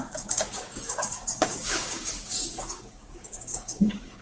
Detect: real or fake fake